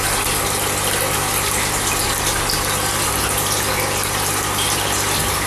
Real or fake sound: real